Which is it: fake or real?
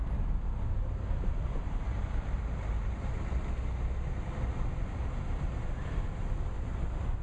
real